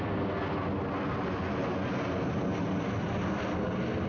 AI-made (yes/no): no